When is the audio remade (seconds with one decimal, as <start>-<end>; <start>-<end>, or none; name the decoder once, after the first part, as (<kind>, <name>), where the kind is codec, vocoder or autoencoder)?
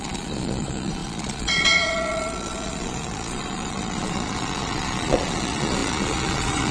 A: 0.0-6.7 (vocoder, Vocos)